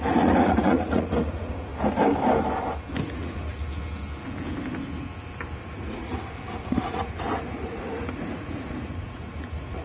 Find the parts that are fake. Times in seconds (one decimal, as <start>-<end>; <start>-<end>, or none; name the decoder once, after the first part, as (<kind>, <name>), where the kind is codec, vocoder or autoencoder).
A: 0.0-1.7 (vocoder, Vocos); 3.0-3.5; 5.6-6.1; 6.7-9.8